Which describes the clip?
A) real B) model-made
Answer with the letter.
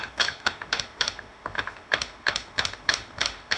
B